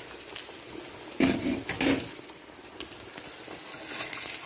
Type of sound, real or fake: real